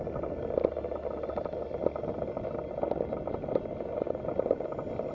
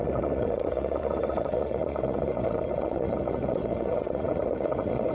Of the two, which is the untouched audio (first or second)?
first